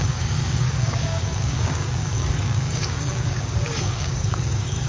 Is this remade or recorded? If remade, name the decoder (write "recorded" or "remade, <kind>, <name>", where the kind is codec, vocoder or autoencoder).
remade, codec, DAC